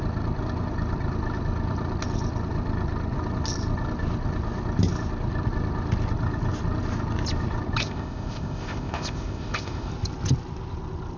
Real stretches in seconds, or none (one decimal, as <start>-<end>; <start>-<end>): 0.0-7.8; 9.9-11.2